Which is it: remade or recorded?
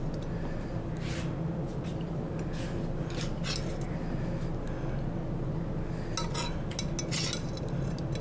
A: recorded